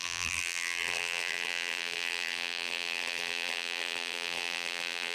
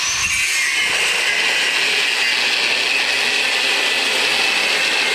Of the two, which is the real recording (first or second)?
second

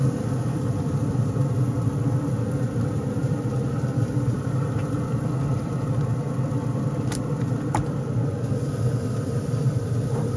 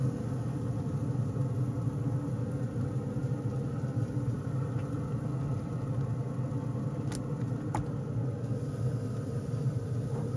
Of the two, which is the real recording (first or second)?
second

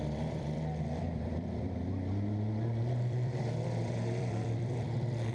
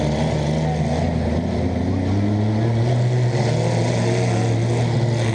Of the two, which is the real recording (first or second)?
second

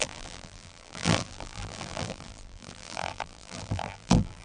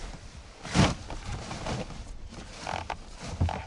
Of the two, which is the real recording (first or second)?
second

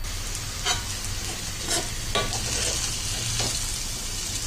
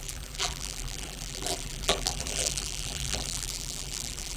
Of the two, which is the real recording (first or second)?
first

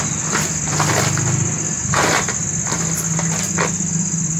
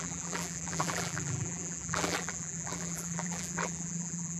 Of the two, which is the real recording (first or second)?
first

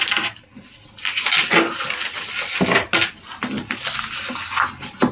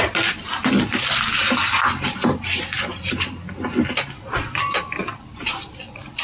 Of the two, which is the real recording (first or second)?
first